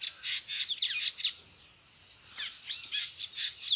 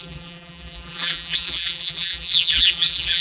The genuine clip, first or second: first